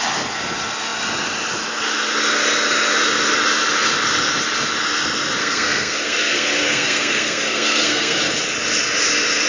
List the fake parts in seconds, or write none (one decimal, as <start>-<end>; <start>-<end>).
5.4-8.2